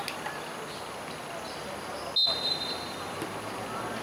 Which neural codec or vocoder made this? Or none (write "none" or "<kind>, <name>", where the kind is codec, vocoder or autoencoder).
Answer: none